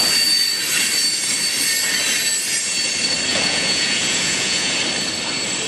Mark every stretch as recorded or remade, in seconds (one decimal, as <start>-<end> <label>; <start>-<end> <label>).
0.0-3.3 recorded; 3.3-4.8 remade; 4.8-5.7 recorded